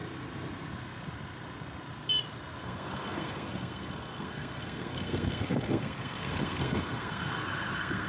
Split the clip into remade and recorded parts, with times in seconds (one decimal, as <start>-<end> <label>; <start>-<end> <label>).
0.0-2.6 recorded; 2.6-8.1 remade